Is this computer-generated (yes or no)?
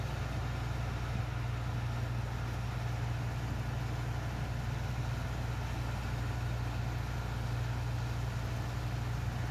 no